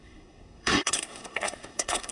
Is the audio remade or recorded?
remade